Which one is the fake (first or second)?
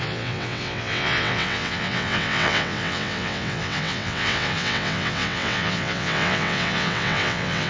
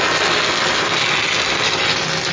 first